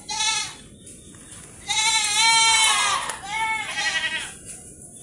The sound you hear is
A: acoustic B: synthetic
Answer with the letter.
A